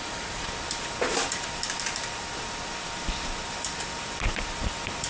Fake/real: fake